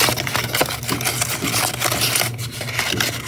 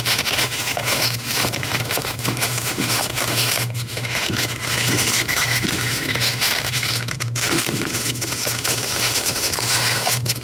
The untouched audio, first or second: first